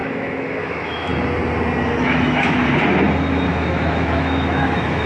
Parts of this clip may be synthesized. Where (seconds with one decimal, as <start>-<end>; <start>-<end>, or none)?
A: 0.0-1.1; 2.0-2.6; 3.5-5.1